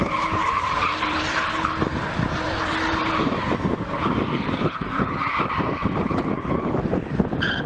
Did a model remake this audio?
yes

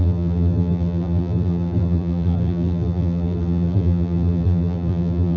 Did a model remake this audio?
yes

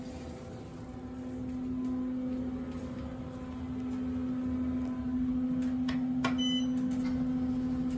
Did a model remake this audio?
no